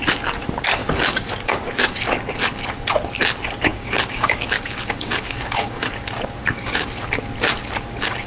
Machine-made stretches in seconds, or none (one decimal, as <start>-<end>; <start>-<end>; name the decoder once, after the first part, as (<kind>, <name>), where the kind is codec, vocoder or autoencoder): 3.7-5.9 (codec, DAC); 6.4-6.9

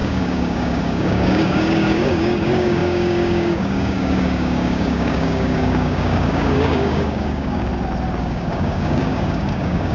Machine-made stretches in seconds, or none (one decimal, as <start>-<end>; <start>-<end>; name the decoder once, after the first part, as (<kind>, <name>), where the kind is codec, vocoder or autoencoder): 0.0-7.7 (codec, DAC); 8.2-9.9

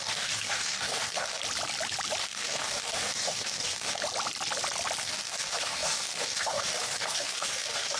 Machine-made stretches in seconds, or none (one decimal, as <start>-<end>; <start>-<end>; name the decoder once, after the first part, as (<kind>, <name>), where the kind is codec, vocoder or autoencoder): 0.0-1.4 (codec, DAC); 2.2-4.0; 5.0-8.0

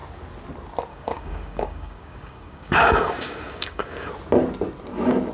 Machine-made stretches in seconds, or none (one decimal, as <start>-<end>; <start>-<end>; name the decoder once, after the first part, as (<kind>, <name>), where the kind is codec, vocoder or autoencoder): 0.9-4.1 (codec, DAC)

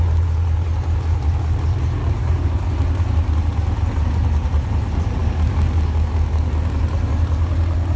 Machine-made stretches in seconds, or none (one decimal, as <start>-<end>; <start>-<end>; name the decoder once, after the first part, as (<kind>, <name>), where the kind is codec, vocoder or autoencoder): 2.0-2.5 (codec, DAC); 5.2-6.8

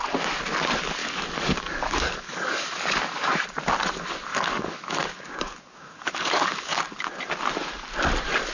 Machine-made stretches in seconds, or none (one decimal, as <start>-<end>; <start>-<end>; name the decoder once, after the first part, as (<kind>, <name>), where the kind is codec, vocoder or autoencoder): 1.0-3.3 (codec, DAC); 4.3-6.8

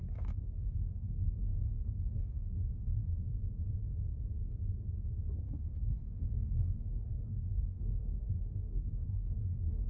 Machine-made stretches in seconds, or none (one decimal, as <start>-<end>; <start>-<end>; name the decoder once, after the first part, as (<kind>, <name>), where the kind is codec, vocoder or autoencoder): 0.0-3.1 (codec, DAC); 5.3-9.9

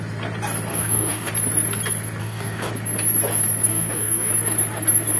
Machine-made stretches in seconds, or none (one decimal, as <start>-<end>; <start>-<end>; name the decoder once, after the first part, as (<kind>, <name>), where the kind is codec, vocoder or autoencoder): 0.7-1.3 (codec, DAC); 2.2-2.7; 3.7-4.3